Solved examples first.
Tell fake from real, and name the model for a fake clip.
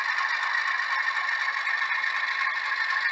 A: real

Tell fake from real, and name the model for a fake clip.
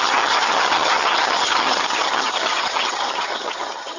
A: fake, vocoder, HiFi-GAN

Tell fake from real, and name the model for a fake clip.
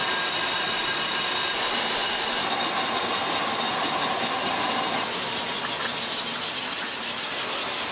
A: real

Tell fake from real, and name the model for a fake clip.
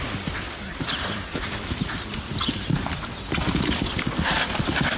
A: fake, vocoder, BigVGAN v2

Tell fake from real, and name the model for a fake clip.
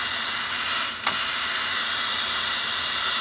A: real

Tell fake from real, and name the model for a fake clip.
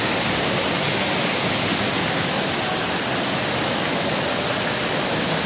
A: real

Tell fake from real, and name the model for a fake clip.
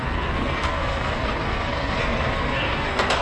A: fake, codec, SNAC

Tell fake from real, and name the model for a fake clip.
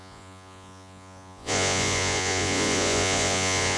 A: fake, vocoder, Vocos